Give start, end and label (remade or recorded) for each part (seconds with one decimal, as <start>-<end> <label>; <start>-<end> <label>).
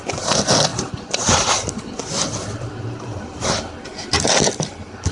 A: 0.0-5.1 recorded